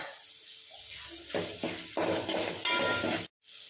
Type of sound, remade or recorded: recorded